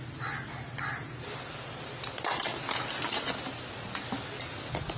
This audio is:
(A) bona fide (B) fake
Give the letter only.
A